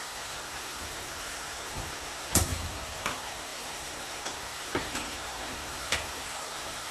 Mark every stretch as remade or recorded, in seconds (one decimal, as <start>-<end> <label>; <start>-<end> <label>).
0.0-6.9 remade